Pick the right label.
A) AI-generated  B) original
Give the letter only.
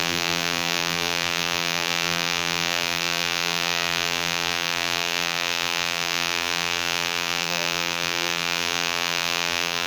A